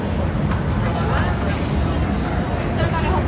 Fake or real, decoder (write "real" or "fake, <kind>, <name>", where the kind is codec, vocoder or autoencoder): real